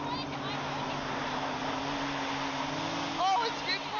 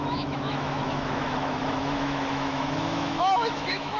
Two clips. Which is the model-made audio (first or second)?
second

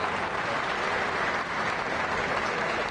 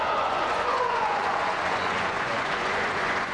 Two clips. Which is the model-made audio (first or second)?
second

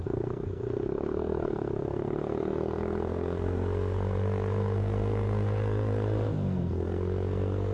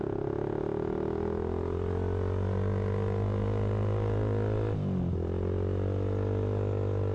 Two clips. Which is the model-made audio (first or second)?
first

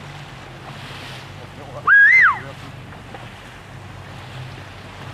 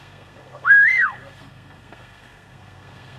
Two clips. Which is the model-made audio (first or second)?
second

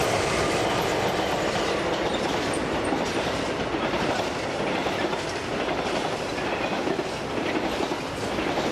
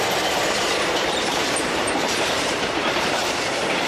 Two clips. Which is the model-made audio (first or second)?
second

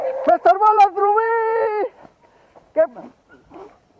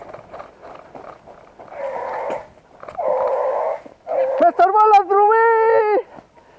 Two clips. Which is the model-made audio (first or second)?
first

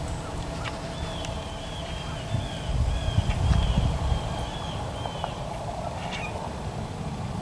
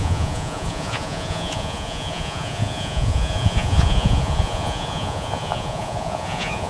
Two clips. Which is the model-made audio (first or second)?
second